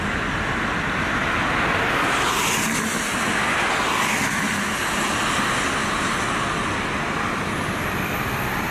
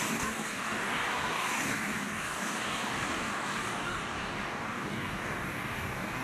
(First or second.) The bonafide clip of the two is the first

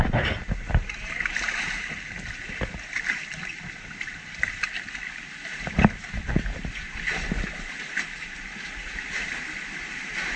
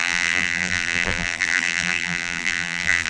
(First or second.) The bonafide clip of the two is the first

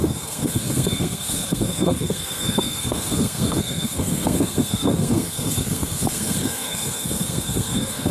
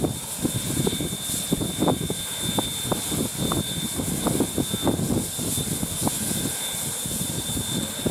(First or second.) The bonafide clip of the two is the second